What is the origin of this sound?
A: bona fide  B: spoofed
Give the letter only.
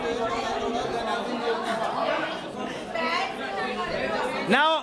A